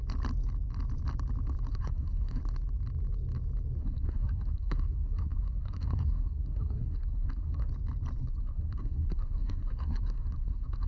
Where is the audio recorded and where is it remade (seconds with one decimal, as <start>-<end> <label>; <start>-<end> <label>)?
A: 0.0-1.7 recorded; 1.7-2.4 remade; 2.4-3.8 recorded; 3.8-7.7 remade; 7.7-8.2 recorded; 8.2-10.9 remade